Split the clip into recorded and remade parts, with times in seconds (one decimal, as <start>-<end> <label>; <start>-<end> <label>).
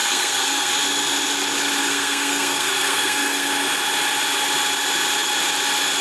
0.0-0.7 remade; 0.7-1.8 recorded; 1.8-3.5 remade; 3.5-6.0 recorded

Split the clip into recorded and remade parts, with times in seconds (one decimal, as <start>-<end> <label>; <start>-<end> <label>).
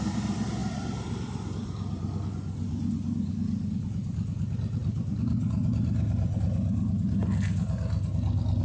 0.0-0.6 recorded; 0.6-3.3 remade; 3.3-4.8 recorded; 4.8-6.4 remade; 6.4-8.6 recorded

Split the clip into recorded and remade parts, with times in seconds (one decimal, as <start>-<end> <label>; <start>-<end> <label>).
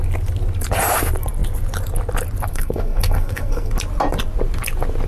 0.0-2.5 recorded; 2.5-3.7 remade; 3.7-5.1 recorded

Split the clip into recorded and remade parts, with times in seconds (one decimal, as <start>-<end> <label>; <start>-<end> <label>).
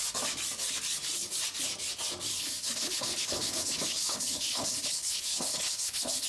0.0-2.3 recorded; 2.3-6.3 remade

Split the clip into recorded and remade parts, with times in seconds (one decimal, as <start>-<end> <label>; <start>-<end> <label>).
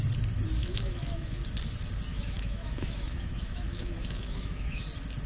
0.0-0.6 recorded; 0.6-1.4 remade; 1.4-2.1 recorded; 2.1-4.8 remade; 4.8-5.3 recorded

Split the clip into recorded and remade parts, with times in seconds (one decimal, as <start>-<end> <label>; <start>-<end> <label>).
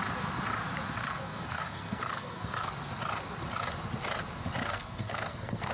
0.0-1.0 recorded; 1.0-2.7 remade; 2.7-4.6 recorded; 4.6-5.7 remade